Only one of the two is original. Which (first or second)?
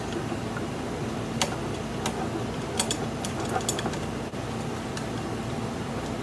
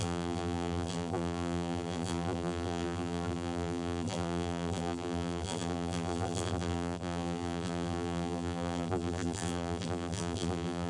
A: first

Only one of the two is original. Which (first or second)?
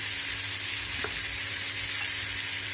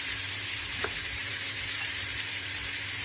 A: first